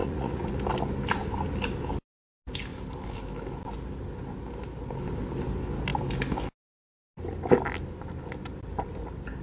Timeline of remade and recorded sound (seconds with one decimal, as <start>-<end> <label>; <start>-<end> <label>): 0.0-0.6 remade; 0.6-9.4 recorded

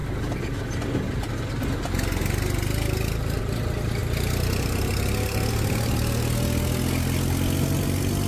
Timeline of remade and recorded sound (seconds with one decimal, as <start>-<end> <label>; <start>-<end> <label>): 0.0-8.3 recorded

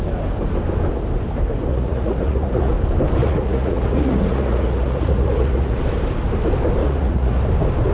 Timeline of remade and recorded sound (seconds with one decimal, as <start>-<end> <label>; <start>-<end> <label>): 0.0-1.7 recorded; 1.7-2.7 remade; 2.7-3.2 recorded; 3.2-5.8 remade; 5.8-6.8 recorded; 6.8-7.4 remade; 7.4-7.9 recorded

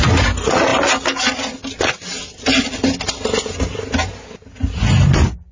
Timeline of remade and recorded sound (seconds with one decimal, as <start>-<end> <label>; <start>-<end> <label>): 0.0-5.5 recorded